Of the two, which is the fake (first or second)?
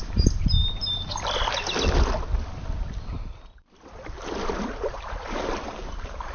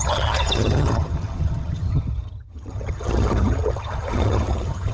second